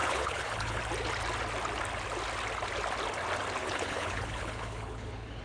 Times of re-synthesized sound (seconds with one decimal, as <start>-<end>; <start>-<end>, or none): 0.0-0.8; 3.6-5.4